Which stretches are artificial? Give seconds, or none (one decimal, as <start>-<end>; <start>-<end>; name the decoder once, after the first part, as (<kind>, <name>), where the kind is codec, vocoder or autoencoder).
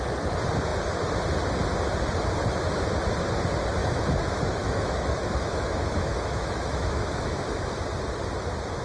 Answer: 3.8-7.8 (autoencoder, DAC-VAE)